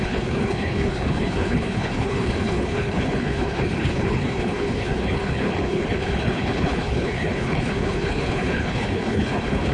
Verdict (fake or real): fake